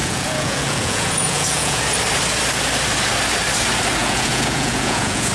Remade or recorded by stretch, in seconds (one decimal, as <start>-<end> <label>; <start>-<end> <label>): 0.0-1.8 remade; 1.8-4.0 recorded; 4.0-5.3 remade